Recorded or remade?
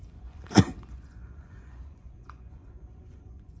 remade